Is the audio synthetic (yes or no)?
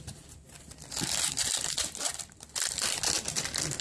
yes